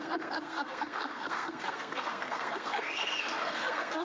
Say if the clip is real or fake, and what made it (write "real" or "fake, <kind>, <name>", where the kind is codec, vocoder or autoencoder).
fake, codec, SNAC